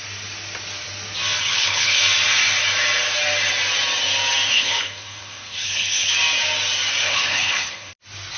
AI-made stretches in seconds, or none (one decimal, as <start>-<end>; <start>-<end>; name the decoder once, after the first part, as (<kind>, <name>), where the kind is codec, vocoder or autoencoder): 1.4-2.0 (codec, HILCodec); 4.5-6.1; 7.0-7.9